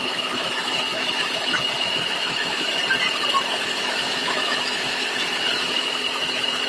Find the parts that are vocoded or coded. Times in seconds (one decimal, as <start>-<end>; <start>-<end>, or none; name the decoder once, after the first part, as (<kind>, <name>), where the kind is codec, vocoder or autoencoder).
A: 0.0-2.8 (autoencoder, DAC-VAE); 3.5-6.7